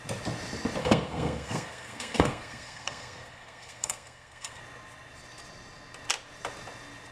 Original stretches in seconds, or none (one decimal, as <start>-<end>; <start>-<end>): 0.0-0.8; 4.6-7.1